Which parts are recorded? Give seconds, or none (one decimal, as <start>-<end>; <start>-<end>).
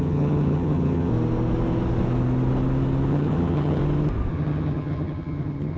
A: 1.1-3.1; 3.8-4.3